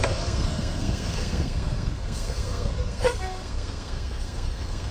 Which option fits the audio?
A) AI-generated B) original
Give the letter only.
A